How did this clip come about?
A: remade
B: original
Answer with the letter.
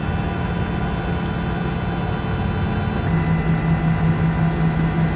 B